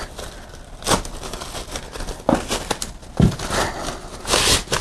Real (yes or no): yes